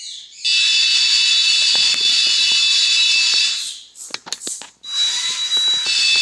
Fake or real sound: real